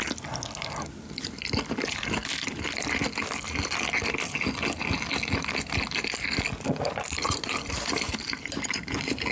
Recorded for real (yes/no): yes